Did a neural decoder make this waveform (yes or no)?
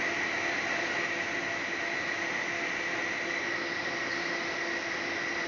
no